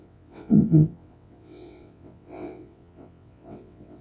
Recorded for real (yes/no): no